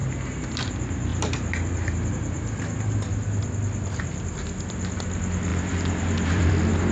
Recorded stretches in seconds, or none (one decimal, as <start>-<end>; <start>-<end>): 0.7-1.1; 2.1-5.5; 6.5-6.9